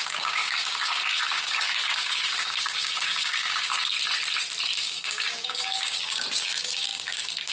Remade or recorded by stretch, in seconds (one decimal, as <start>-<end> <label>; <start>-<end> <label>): 0.0-3.9 remade; 3.9-4.8 recorded; 4.8-7.5 remade